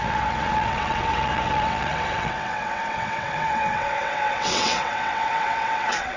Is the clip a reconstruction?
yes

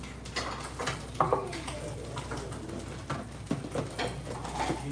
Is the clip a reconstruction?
no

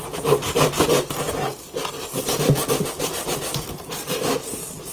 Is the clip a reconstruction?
no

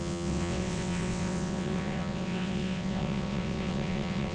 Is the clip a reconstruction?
yes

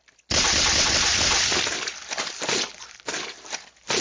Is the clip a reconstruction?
no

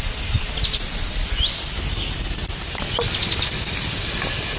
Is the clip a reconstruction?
no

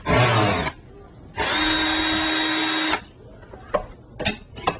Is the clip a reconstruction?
no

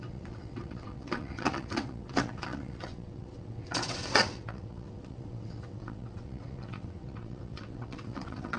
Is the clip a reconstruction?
yes